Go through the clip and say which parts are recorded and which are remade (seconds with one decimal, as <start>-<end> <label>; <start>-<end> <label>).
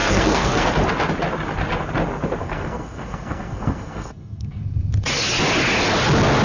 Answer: 0.0-0.7 remade; 0.7-2.4 recorded; 2.4-4.6 remade; 4.6-6.4 recorded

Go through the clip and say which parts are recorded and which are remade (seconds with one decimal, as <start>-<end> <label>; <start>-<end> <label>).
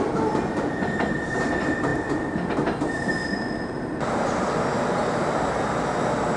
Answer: 0.0-6.4 recorded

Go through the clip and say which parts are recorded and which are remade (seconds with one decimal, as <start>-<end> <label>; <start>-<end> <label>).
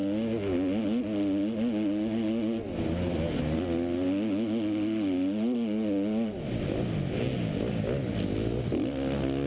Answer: 0.0-9.5 recorded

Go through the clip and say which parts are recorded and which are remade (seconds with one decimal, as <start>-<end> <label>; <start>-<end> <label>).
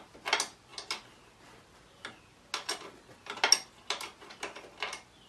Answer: 0.0-5.3 recorded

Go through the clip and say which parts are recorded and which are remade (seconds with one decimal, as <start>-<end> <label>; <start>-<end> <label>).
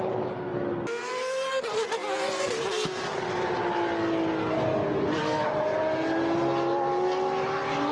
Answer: 0.0-7.9 recorded